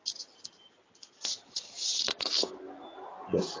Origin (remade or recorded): recorded